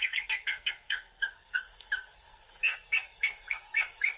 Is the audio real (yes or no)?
no